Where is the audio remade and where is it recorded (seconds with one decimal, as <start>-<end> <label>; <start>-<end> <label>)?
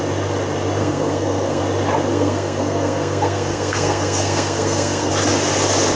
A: 0.0-0.8 recorded; 0.8-1.6 remade; 1.6-2.1 recorded; 2.1-5.1 remade; 5.1-6.0 recorded